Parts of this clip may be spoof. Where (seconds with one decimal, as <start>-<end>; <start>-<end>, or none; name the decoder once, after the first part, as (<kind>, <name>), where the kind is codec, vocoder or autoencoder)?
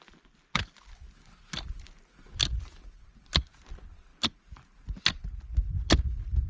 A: none